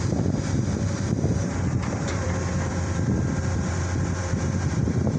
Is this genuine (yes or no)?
no